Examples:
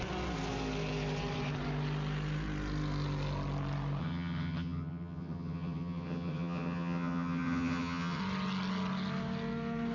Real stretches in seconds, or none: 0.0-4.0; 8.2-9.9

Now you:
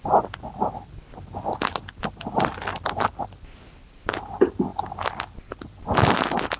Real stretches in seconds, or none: 0.0-6.6

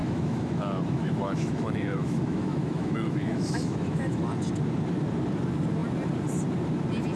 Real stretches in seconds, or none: 4.3-7.2

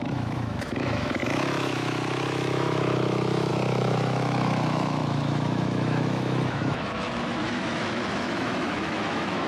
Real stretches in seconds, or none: none

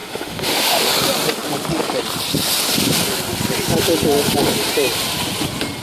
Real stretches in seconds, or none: 0.9-5.8